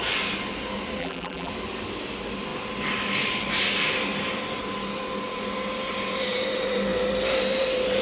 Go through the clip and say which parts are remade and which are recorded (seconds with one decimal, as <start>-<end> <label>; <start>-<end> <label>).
0.0-1.0 recorded; 1.0-1.5 remade; 1.5-8.0 recorded